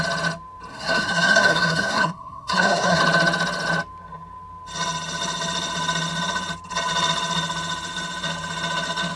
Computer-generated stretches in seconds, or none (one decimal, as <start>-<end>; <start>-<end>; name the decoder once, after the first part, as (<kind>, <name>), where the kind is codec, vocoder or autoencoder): 0.7-3.0 (codec, SNAC)